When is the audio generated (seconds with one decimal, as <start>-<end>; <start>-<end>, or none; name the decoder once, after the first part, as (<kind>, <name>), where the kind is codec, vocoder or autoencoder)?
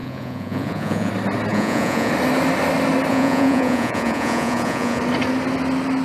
0.0-1.1 (vocoder, Vocos); 1.5-2.1; 3.1-5.0